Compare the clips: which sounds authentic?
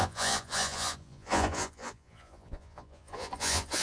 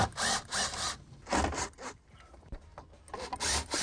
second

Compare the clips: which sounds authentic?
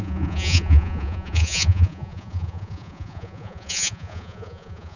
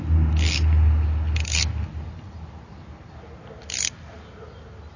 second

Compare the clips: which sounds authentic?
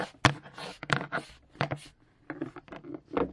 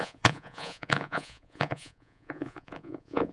first